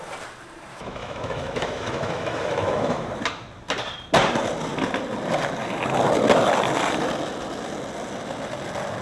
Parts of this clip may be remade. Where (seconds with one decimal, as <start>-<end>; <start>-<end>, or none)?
0.7-3.1